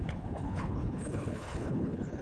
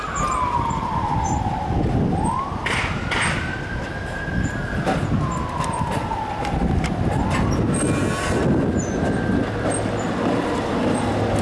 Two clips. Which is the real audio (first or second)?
second